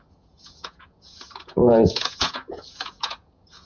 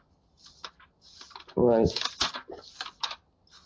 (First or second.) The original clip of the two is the second